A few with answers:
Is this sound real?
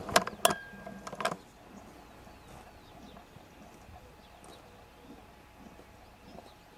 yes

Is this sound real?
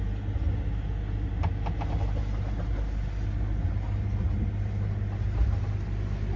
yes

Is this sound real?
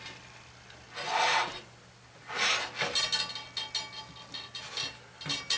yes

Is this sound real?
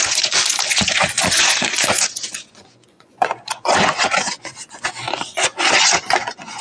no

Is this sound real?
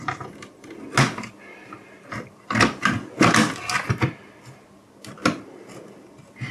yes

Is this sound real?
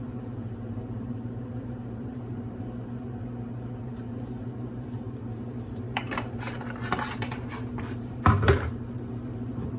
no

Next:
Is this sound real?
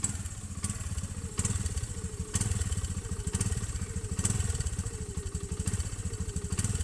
yes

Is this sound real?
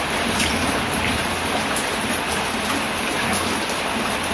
yes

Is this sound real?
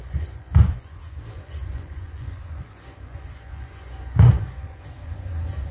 no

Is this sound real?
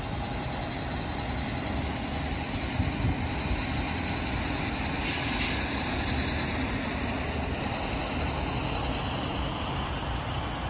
yes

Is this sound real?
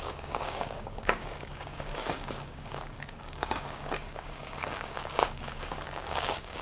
no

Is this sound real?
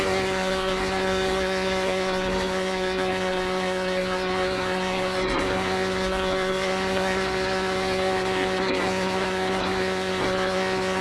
no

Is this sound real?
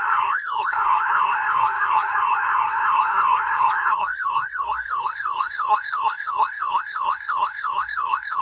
no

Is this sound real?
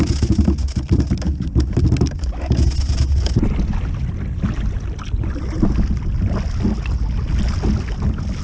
yes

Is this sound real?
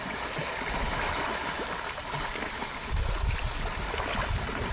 yes